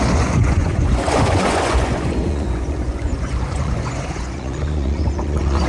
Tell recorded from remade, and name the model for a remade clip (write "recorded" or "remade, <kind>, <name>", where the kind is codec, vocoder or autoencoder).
remade, vocoder, Vocos